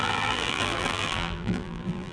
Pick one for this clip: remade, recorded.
remade